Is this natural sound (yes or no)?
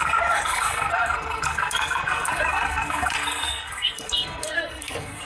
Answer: no